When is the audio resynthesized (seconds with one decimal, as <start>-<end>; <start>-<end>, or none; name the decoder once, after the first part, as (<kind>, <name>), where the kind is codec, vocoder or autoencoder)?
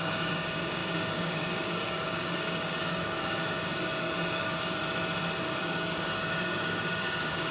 0.0-4.8 (codec, DAC); 5.6-7.5